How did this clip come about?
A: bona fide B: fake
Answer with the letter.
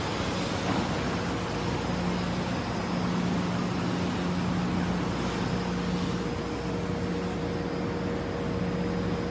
A